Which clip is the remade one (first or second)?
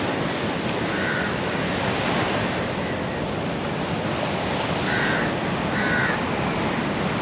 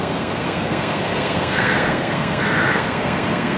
second